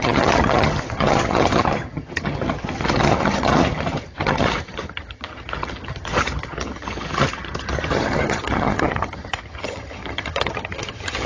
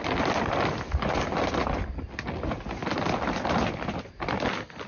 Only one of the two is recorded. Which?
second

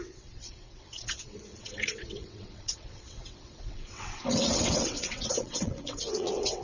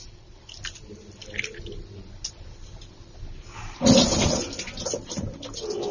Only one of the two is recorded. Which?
second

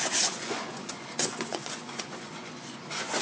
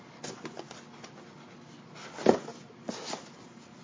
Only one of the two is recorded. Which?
second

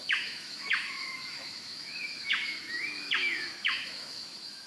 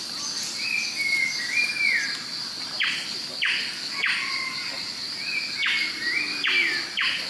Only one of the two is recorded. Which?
second